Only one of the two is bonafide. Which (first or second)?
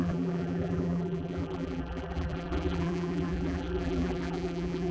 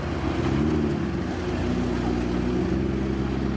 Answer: second